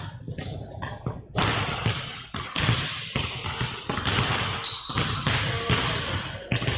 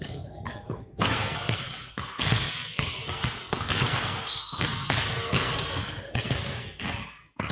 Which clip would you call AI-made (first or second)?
second